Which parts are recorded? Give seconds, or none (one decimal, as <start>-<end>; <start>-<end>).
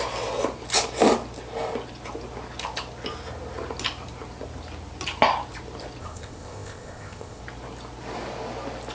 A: 0.0-6.0; 7.4-8.9